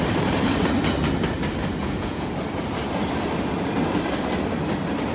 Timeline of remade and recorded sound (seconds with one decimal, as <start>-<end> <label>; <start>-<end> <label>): 0.0-1.8 recorded; 1.8-2.3 remade; 2.3-5.1 recorded